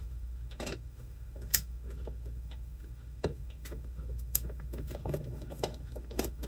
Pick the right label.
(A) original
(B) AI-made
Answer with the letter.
B